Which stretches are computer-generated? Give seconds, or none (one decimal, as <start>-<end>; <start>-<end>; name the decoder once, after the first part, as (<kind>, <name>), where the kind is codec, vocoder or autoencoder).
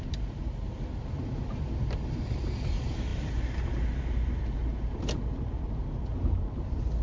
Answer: none